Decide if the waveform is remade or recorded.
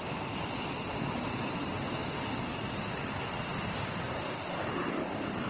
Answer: remade